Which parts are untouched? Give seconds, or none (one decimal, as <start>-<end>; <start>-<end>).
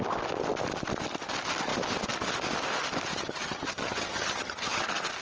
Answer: 0.0-3.1; 4.8-5.2